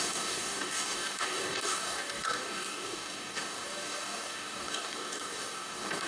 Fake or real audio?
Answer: fake